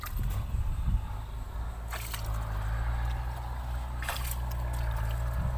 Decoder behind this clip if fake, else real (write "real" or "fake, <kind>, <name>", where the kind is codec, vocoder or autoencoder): real